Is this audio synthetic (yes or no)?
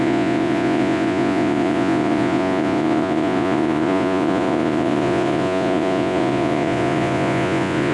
yes